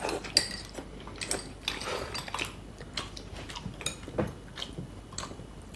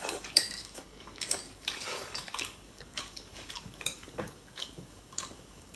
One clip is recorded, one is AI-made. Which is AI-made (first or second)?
second